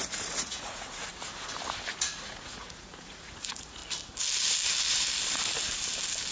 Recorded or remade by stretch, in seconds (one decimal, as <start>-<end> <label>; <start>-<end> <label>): 0.0-1.1 remade; 1.1-1.9 recorded; 1.9-3.8 remade; 3.8-6.3 recorded